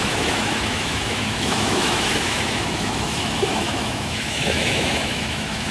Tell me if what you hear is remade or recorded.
remade